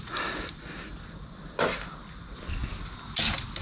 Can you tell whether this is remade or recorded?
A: recorded